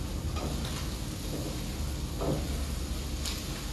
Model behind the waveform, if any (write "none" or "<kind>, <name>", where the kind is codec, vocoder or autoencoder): none